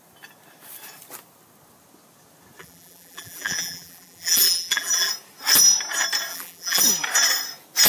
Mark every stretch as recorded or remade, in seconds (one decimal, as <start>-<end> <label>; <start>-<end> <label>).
0.0-2.6 recorded; 2.6-5.1 remade; 5.1-6.3 recorded; 6.3-6.8 remade; 6.8-7.9 recorded